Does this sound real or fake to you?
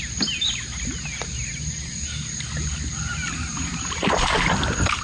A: real